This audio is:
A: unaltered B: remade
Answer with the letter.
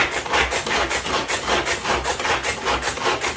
A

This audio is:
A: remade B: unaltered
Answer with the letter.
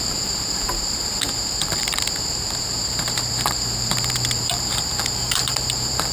A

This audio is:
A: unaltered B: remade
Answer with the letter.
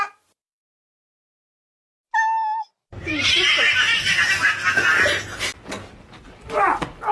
A